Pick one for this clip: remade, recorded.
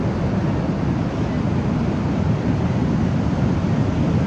recorded